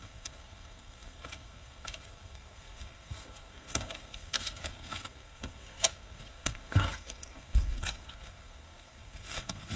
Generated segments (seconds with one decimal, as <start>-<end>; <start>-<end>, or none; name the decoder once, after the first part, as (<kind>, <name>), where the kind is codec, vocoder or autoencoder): 0.0-9.8 (codec, SNAC)